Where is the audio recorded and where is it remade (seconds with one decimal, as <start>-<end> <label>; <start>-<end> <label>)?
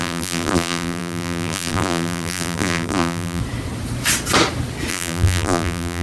0.0-3.4 remade; 3.4-4.9 recorded; 4.9-6.0 remade